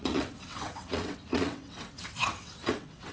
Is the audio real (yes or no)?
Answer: no